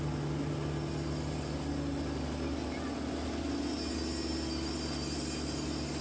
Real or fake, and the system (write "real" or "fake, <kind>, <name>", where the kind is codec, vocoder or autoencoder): real